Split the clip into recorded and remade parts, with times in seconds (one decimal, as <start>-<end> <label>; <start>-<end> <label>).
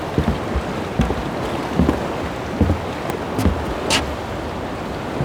0.0-5.2 recorded